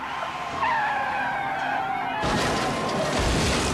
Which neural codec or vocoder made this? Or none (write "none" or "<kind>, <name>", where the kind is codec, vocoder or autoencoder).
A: none